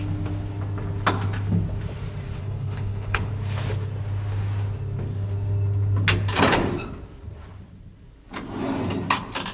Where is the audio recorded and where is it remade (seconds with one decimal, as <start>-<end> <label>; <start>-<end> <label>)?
0.0-2.4 recorded; 2.4-3.3 remade; 3.3-9.5 recorded